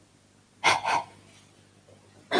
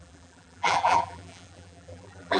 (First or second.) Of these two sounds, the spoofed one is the second